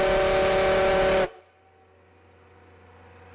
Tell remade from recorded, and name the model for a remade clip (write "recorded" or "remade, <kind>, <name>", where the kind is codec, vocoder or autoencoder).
recorded